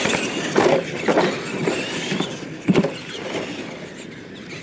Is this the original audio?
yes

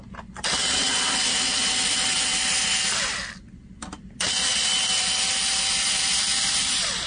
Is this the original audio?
no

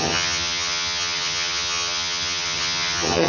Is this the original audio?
no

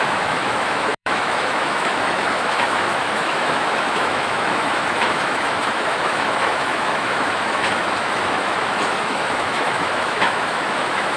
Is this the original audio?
no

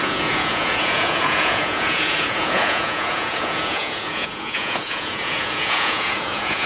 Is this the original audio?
no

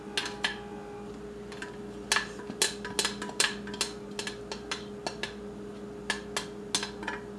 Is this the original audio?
yes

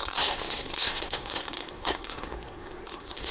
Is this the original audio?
no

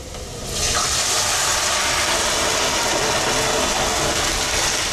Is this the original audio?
yes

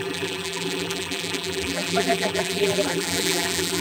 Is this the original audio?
no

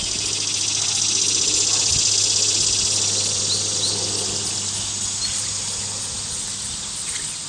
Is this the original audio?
yes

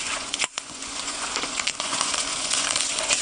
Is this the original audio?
no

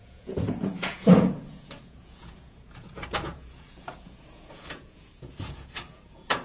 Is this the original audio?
no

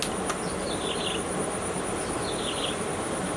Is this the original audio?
yes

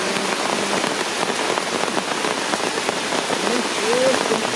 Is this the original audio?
yes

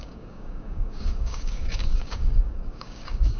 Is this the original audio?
no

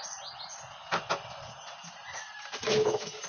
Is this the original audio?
yes